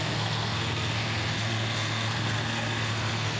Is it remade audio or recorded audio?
remade